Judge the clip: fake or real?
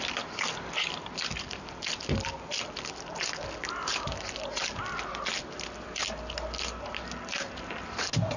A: real